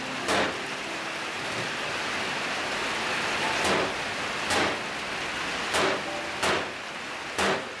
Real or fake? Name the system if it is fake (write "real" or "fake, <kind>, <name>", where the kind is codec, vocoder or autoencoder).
real